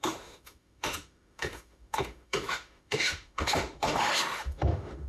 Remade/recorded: remade